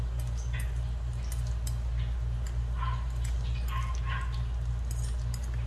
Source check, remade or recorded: recorded